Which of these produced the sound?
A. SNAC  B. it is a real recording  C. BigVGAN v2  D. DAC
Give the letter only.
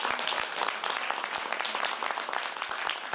B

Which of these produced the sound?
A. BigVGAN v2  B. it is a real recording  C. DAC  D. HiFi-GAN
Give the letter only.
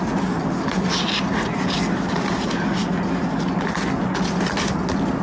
B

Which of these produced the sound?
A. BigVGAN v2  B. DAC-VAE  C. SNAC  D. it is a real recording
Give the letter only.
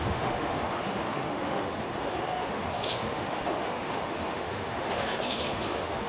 B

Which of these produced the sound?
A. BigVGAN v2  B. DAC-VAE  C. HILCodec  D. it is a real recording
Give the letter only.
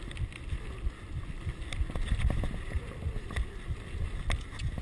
D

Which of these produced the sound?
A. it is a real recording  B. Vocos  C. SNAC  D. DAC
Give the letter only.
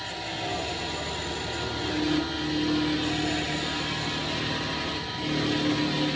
A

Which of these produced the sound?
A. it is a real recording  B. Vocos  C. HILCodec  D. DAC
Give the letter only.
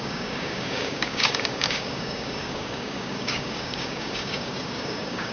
D